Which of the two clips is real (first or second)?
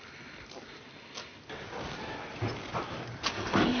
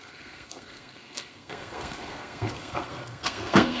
first